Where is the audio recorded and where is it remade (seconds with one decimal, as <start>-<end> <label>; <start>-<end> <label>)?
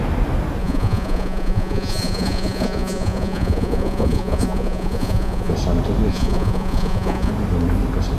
0.0-0.6 recorded; 0.6-5.5 remade; 5.5-6.1 recorded; 6.1-7.3 remade; 7.3-8.2 recorded